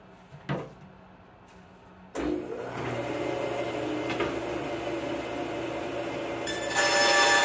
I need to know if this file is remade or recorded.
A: recorded